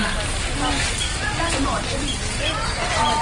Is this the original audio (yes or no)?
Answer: yes